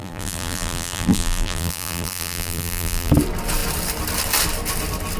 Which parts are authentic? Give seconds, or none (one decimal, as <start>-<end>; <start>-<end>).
3.1-5.2